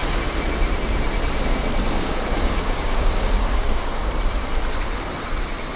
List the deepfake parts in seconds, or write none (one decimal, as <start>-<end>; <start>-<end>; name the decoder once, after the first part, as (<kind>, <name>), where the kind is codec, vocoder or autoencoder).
1.8-4.0 (codec, DAC)